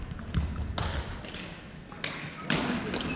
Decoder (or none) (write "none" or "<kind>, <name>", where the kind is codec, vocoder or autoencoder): none